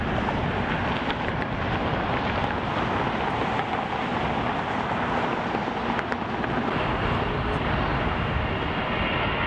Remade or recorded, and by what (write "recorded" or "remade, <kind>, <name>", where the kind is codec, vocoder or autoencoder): recorded